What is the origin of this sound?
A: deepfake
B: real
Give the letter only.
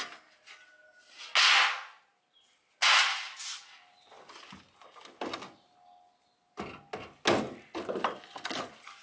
B